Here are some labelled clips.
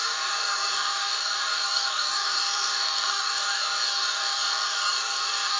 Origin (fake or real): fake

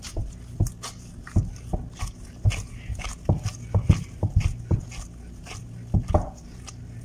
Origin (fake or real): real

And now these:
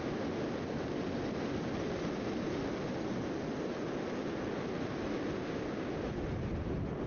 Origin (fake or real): real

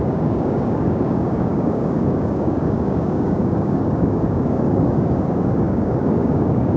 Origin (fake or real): fake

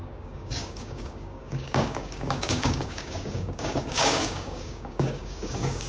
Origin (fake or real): fake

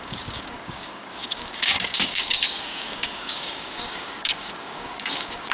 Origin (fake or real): fake